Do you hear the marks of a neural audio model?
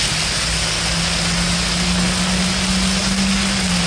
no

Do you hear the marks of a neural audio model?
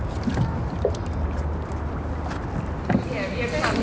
no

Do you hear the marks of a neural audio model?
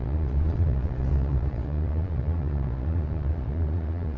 yes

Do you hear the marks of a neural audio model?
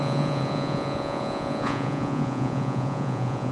yes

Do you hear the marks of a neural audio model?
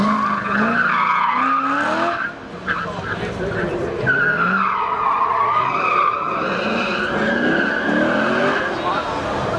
no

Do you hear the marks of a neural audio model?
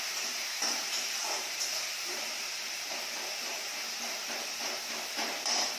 yes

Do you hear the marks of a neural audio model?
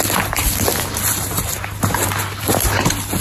no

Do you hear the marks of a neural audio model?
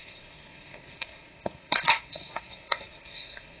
yes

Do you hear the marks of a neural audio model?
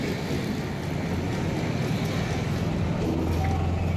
no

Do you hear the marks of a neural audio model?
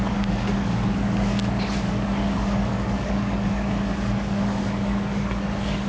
yes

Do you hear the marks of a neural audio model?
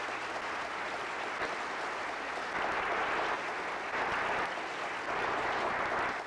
no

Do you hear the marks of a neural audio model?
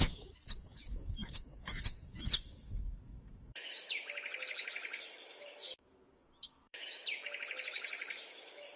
yes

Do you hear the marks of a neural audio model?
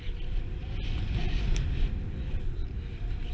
no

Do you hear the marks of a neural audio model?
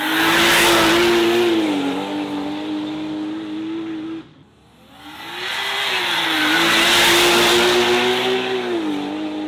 no